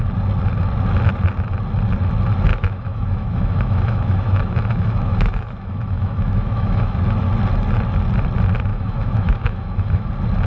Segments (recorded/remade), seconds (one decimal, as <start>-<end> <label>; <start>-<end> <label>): 0.0-2.5 recorded; 2.5-7.0 remade; 7.0-8.7 recorded; 8.7-10.1 remade; 10.1-10.5 recorded